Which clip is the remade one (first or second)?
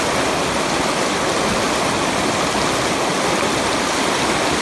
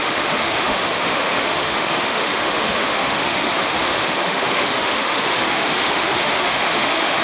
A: second